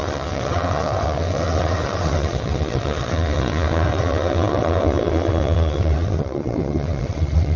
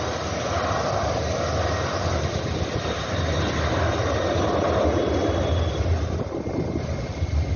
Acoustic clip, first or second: second